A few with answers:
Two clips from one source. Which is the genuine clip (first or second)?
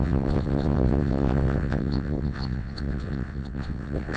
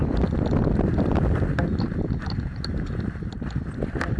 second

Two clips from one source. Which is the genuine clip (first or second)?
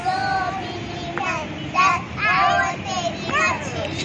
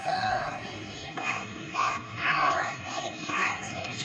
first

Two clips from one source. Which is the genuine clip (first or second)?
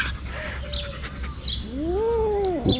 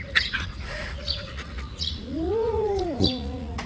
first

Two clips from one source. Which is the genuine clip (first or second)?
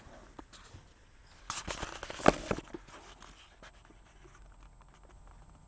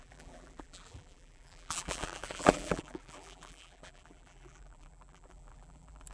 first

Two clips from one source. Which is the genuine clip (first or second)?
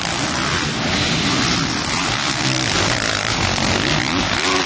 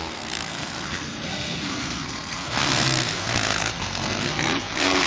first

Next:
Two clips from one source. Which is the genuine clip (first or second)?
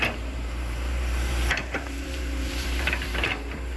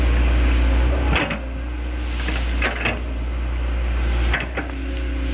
second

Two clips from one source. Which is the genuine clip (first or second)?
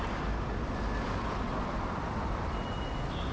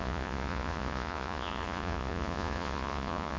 first